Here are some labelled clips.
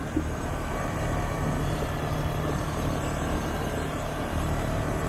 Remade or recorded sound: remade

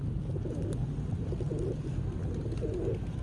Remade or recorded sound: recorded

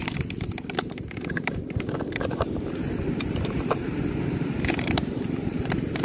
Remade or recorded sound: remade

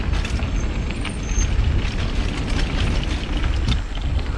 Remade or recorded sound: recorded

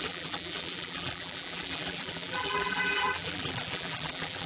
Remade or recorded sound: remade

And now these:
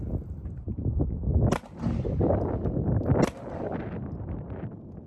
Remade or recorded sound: recorded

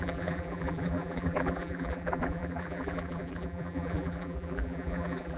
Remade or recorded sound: remade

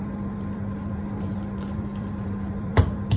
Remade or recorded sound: remade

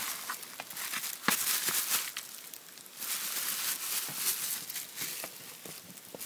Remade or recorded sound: recorded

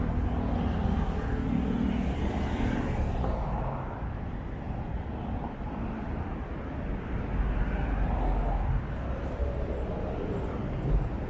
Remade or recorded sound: recorded